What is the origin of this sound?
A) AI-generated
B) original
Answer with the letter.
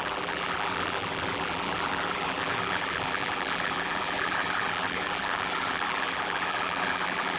A